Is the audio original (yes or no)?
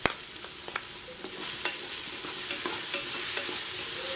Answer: yes